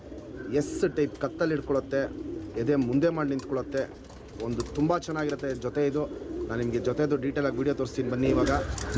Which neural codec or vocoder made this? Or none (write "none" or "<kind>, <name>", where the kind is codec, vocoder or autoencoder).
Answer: none